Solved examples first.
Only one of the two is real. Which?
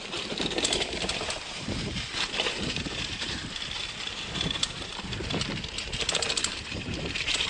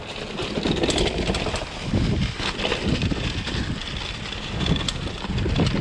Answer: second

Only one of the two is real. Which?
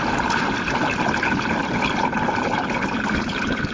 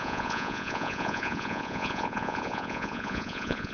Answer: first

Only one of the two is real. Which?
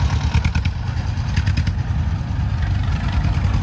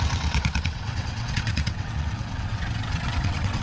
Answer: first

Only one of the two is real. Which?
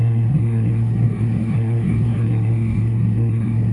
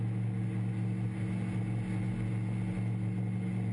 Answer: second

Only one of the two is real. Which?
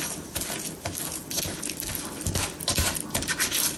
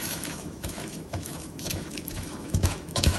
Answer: first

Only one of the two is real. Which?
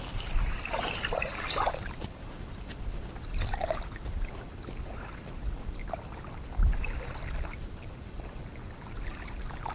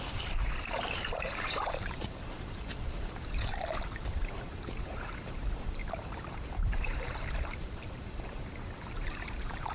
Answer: first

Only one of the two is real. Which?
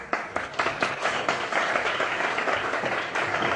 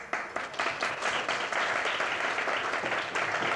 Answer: second